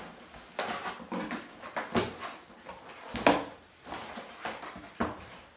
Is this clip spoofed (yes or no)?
no